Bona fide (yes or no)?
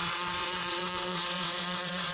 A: no